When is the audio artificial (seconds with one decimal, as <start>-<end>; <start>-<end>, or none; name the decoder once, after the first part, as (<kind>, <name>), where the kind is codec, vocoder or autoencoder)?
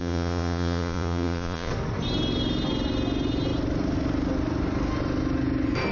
0.0-1.7 (vocoder, Vocos)